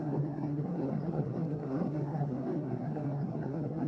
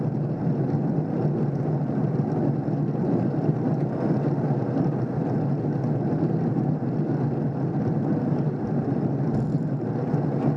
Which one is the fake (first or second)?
first